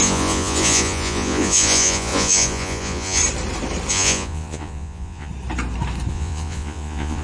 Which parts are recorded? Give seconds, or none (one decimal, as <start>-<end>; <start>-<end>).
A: 3.2-3.9; 5.3-6.1